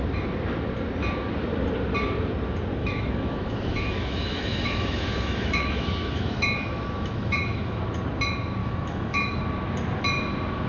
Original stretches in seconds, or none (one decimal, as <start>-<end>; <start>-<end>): 0.0-2.8; 7.8-8.6; 9.4-10.7